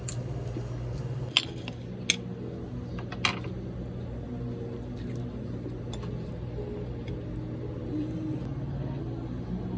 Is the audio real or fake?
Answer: real